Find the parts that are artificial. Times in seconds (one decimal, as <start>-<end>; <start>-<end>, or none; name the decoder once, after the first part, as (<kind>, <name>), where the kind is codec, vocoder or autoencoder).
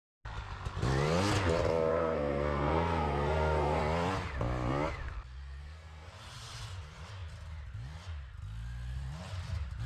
1.9-3.8 (codec, SNAC); 5.6-6.1